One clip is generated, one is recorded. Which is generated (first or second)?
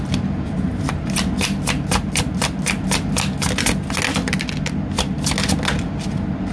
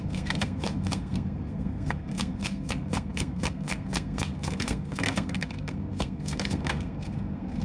second